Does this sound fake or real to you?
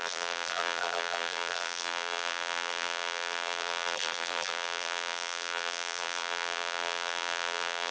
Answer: fake